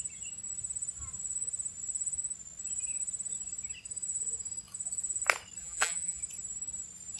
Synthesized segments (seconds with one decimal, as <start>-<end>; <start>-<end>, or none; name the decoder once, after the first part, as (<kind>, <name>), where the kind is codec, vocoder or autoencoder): 5.6-6.2 (vocoder, BigVGAN v2)